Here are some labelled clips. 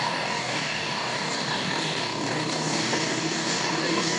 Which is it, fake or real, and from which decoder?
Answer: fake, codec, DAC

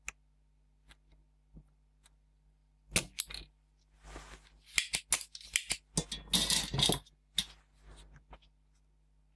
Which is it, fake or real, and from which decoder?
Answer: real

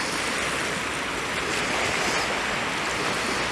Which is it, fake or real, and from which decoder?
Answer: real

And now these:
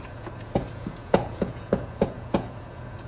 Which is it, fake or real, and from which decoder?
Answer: fake, vocoder, Vocos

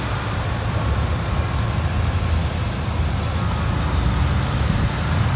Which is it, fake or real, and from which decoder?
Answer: real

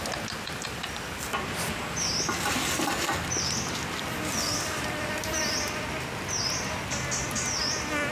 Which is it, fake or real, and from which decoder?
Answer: real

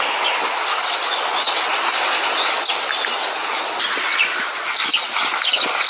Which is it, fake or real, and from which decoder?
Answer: real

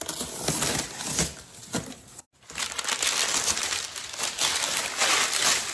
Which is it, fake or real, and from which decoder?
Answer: real